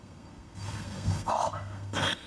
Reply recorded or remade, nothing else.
remade